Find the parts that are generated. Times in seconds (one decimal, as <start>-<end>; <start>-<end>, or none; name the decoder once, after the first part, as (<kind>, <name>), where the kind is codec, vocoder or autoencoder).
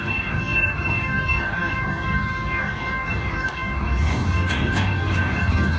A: 0.0-5.8 (codec, DAC)